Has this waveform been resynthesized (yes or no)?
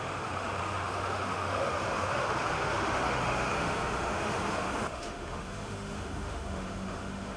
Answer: yes